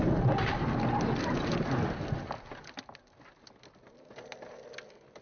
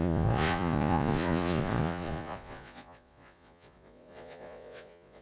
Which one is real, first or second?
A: first